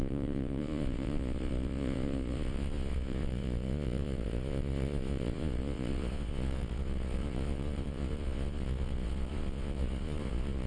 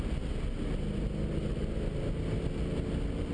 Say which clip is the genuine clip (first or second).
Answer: second